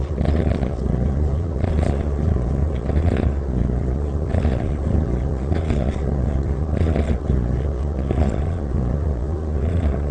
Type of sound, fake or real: fake